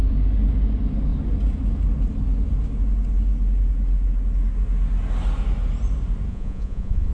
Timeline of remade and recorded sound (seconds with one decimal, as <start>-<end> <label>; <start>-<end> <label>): 0.0-6.3 recorded; 6.3-7.1 remade